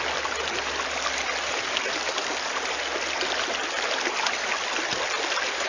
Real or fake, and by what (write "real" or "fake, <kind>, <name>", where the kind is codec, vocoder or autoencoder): real